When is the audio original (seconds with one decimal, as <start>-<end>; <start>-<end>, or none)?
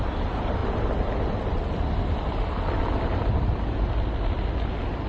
0.0-5.1